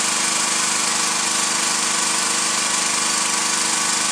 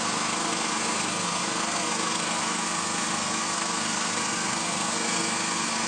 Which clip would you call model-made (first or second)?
second